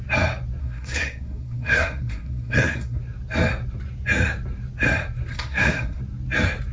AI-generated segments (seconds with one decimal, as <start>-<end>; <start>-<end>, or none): 0.6-3.0; 5.3-6.0